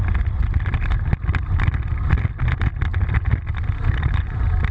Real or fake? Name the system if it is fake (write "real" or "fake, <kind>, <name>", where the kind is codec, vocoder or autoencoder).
real